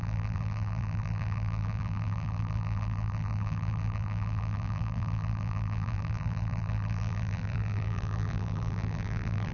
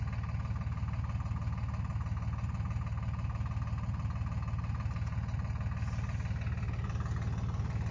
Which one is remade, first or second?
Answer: first